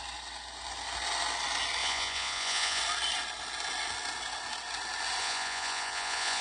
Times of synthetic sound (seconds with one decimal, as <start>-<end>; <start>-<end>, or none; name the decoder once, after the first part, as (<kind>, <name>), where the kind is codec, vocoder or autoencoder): 1.8-2.8 (vocoder, Vocos); 5.2-6.4

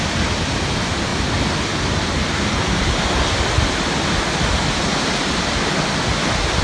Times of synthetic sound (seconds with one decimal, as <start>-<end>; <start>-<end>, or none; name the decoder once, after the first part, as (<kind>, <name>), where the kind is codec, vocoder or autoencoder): none